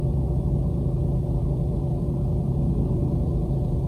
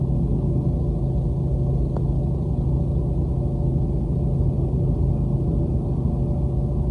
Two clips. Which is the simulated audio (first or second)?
first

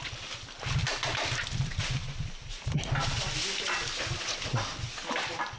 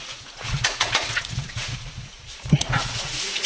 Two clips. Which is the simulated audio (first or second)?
second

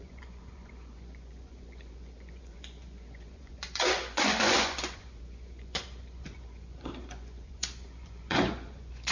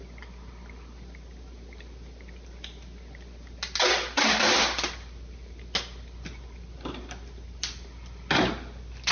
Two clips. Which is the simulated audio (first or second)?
first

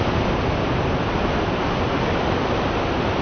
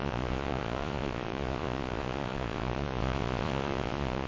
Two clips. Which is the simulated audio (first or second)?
second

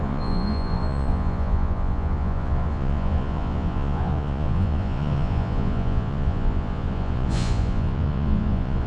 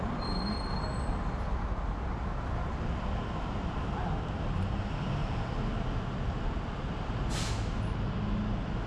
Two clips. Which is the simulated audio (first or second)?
first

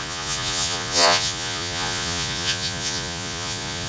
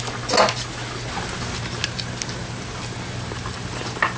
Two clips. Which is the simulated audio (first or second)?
first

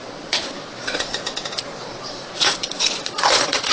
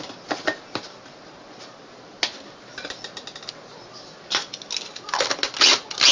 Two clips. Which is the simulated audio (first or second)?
first